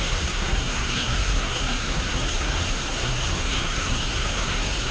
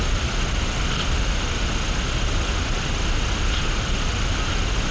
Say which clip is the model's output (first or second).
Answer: first